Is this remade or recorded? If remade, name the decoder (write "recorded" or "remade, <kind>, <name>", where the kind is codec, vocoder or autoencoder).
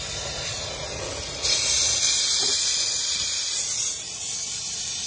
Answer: recorded